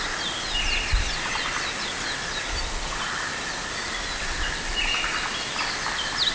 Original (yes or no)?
yes